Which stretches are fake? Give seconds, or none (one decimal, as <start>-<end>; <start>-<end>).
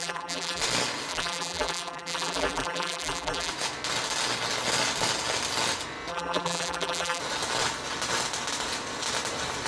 0.0-0.6; 1.1-3.5; 6.1-7.2